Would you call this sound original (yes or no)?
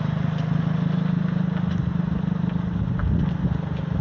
yes